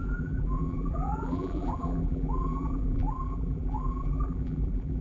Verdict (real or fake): fake